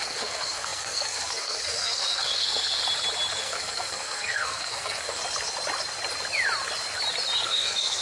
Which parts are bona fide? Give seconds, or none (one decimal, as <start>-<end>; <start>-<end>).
2.8-3.4; 5.2-7.5

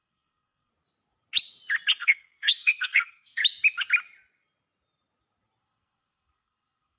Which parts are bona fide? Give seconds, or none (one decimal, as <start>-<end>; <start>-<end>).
0.7-2.0; 3.4-5.6

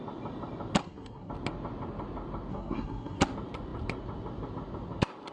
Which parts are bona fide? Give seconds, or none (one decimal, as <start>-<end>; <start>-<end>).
0.0-0.8; 1.3-2.5; 3.2-5.3

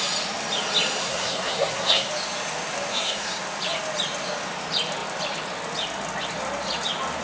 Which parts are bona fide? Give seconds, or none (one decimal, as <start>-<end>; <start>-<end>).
0.0-1.0; 2.1-2.9; 3.4-7.2